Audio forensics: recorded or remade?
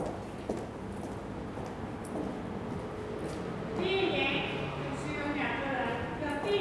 recorded